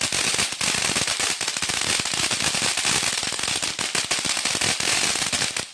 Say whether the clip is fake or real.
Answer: real